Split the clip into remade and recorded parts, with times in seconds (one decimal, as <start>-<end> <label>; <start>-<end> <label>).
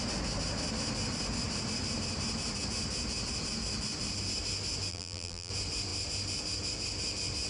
0.0-4.9 recorded; 4.9-5.5 remade; 5.5-7.5 recorded